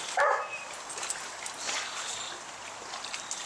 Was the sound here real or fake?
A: real